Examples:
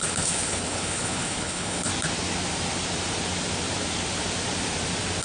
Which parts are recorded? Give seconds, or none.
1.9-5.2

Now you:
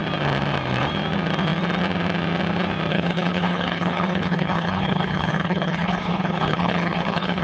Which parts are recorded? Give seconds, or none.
0.0-2.9

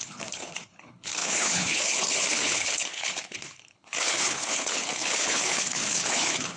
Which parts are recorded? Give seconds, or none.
none

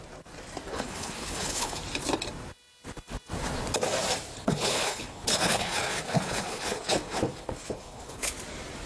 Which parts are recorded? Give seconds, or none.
0.0-0.7; 1.8-4.4; 8.3-8.9

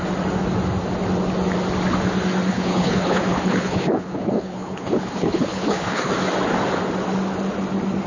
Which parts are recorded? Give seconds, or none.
0.0-2.5; 6.1-8.1

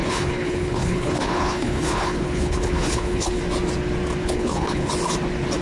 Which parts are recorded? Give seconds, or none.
3.4-4.2; 4.9-5.6

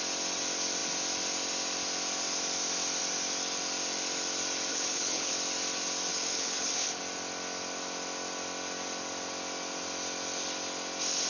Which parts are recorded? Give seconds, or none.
0.0-4.7; 5.3-6.1; 7.0-11.3